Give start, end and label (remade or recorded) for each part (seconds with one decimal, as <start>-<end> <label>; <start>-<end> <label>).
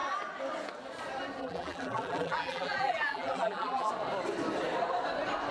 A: 0.0-1.4 recorded; 1.4-3.9 remade; 3.9-5.5 recorded